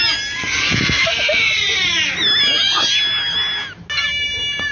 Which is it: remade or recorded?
recorded